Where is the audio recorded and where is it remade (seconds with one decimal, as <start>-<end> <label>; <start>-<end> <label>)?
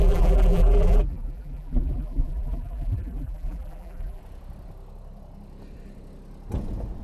0.0-4.2 remade; 4.2-7.0 recorded